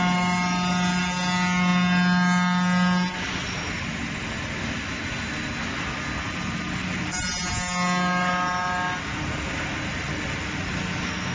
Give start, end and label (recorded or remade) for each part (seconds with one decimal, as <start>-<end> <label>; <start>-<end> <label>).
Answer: 0.0-11.3 recorded